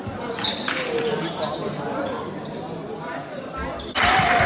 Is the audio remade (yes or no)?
no